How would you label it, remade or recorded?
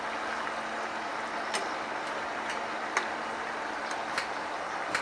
recorded